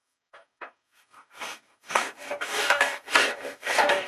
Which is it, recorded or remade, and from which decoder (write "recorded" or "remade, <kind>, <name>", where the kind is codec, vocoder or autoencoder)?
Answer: remade, codec, DAC